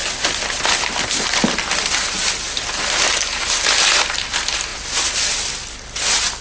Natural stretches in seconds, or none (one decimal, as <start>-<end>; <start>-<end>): 0.0-6.4